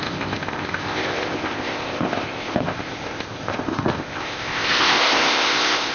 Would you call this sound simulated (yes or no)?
yes